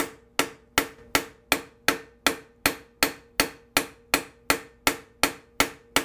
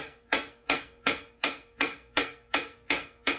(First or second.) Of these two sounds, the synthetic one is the second